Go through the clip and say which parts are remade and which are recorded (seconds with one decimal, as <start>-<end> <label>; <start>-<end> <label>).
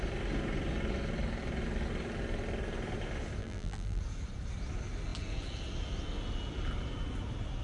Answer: 0.0-3.4 recorded; 3.4-4.0 remade; 4.0-7.6 recorded